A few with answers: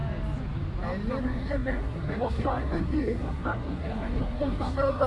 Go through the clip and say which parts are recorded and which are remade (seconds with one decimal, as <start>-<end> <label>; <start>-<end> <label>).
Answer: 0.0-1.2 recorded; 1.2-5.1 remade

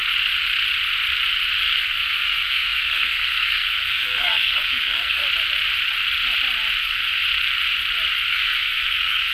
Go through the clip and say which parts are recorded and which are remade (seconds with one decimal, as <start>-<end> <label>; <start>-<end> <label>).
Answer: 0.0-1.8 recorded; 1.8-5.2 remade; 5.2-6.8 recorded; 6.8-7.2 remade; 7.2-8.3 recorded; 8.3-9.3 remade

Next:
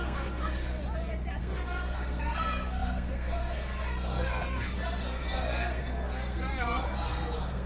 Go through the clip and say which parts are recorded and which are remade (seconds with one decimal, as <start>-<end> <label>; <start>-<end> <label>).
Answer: 0.0-0.8 remade; 0.8-1.4 recorded; 1.4-7.7 remade

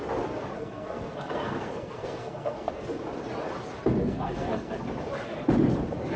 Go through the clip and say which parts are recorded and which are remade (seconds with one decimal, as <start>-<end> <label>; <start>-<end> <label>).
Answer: 0.0-0.5 recorded; 0.5-2.7 remade; 2.7-4.0 recorded; 4.0-4.8 remade; 4.8-6.2 recorded

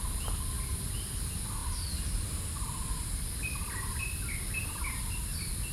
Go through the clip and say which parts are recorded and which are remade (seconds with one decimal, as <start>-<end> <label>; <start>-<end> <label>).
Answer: 0.0-5.7 recorded

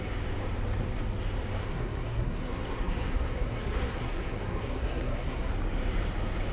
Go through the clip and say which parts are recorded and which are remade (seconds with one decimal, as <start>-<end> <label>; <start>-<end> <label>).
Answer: 0.0-1.6 recorded; 1.6-5.5 remade; 5.5-6.5 recorded